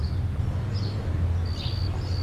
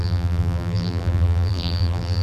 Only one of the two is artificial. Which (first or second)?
second